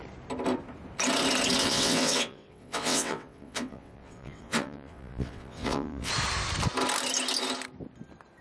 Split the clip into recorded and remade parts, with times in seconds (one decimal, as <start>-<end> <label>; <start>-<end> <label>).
0.0-1.6 recorded; 1.6-6.1 remade; 6.1-8.4 recorded